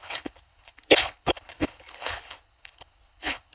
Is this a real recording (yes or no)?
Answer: no